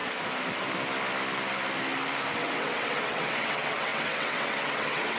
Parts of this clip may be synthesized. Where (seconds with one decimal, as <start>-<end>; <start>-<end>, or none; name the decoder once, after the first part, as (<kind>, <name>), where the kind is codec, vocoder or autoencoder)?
2.4-5.2 (vocoder, WaveNeXt)